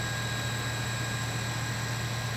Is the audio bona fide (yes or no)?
yes